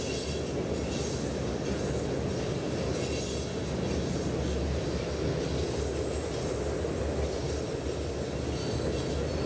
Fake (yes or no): no